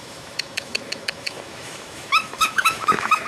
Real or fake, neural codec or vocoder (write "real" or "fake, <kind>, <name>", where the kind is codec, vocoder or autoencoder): fake, autoencoder, DAC-VAE